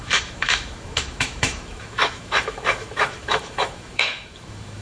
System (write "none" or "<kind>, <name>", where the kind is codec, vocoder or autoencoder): autoencoder, DAC-VAE